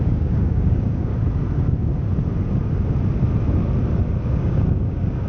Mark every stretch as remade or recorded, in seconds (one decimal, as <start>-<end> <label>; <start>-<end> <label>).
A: 0.0-1.1 remade; 1.1-4.3 recorded; 4.3-5.3 remade